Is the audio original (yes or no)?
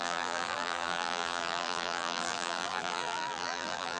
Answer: no